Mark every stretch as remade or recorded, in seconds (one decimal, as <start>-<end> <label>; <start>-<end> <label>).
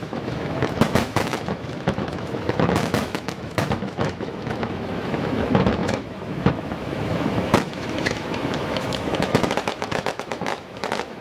0.0-11.2 remade